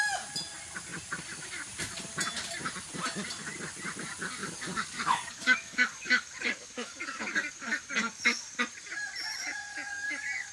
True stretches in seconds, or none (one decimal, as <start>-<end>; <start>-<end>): 0.0-4.4; 8.6-9.7